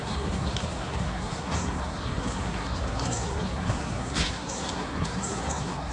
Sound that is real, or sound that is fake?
fake